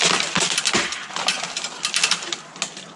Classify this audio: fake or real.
real